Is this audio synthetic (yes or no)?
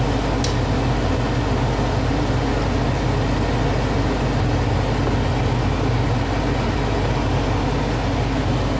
no